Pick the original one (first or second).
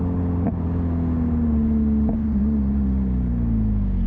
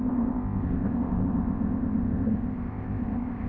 first